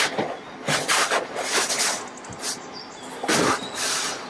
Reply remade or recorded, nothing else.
recorded